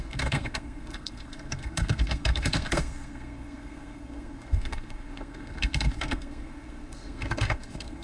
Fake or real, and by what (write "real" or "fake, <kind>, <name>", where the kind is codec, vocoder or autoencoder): fake, codec, SNAC